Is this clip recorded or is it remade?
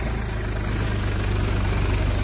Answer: recorded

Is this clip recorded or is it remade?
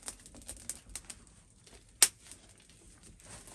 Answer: recorded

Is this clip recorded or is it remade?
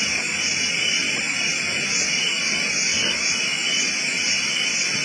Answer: recorded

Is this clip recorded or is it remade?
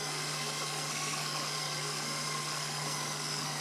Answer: remade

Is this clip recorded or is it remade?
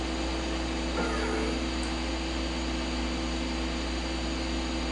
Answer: recorded